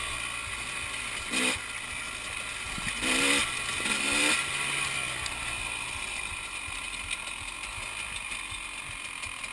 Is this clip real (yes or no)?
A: yes